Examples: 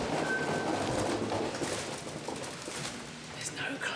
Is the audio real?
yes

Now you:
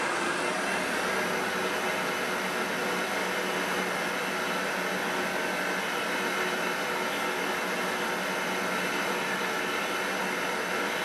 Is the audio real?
yes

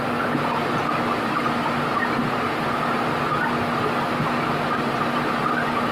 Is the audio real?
yes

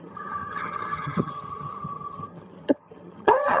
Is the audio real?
no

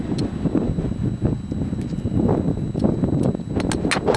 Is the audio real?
yes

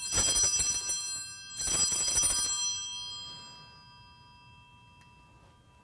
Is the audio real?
yes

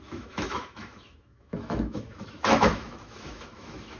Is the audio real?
no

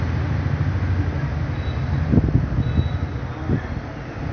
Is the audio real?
yes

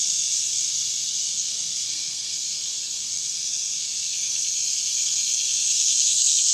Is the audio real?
no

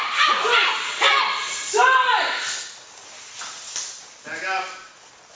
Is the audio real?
yes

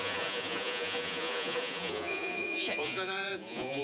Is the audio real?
no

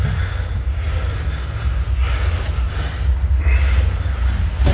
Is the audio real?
yes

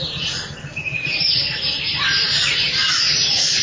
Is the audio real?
no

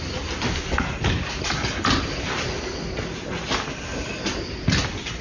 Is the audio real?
yes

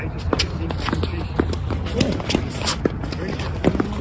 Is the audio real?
yes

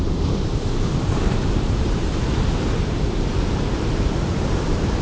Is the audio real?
yes